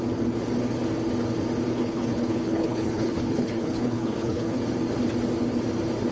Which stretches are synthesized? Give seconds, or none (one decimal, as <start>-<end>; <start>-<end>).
1.7-4.6